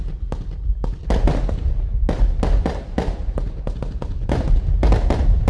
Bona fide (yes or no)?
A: yes